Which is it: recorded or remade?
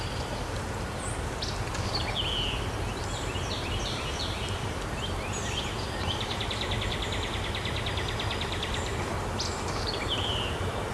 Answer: remade